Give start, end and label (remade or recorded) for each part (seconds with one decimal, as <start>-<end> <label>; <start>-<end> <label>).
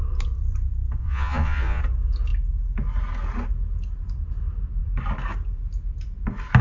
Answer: 0.0-1.0 recorded; 1.0-1.8 remade; 1.8-6.6 recorded